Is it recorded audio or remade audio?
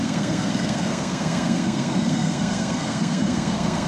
remade